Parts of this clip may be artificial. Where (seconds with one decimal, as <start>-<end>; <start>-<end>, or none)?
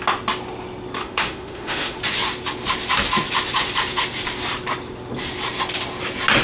1.0-2.0